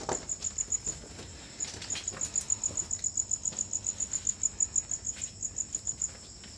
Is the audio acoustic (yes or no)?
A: yes